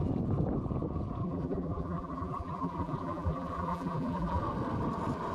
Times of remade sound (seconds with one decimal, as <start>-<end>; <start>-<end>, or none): 1.2-4.4